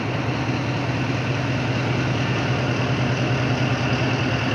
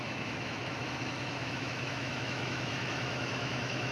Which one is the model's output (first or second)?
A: second